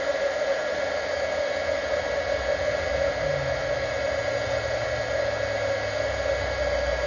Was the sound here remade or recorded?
recorded